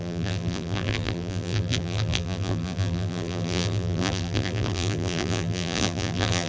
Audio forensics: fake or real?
fake